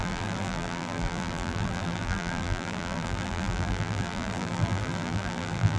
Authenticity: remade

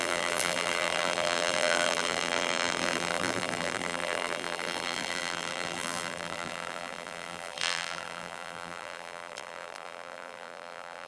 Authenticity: remade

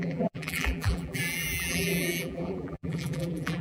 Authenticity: remade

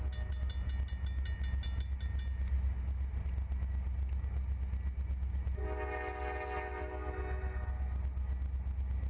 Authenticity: recorded